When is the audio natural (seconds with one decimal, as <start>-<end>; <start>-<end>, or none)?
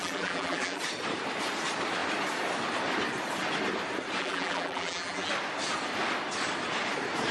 0.8-4.2; 5.3-7.3